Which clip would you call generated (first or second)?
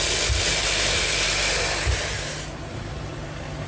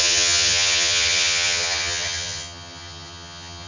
second